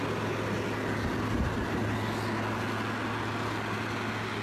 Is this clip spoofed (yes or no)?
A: no